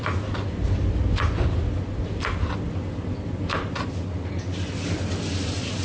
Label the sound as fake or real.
real